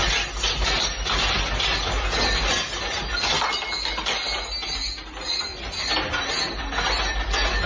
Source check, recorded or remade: recorded